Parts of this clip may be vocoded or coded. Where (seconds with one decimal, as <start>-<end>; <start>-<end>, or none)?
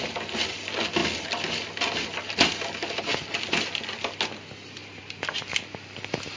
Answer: 4.8-5.5